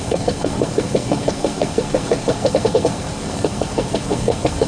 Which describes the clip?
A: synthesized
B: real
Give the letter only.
A